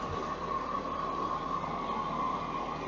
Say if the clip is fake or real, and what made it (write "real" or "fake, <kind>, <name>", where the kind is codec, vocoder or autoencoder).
real